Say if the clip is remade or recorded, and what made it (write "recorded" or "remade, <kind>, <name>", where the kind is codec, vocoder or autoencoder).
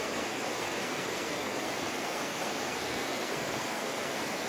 remade, codec, SNAC